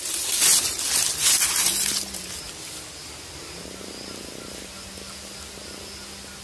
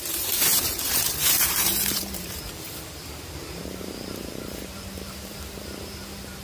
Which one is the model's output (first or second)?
second